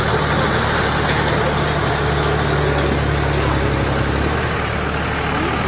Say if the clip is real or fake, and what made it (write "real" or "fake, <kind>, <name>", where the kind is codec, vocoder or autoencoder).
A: real